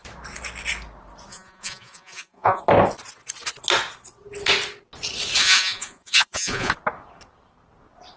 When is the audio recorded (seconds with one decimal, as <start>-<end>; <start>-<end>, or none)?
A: 0.0-1.3; 2.6-5.4; 6.7-8.2